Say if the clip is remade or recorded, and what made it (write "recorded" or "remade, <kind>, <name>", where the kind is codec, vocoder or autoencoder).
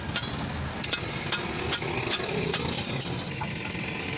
recorded